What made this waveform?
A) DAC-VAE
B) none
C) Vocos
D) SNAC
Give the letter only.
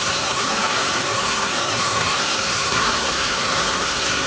D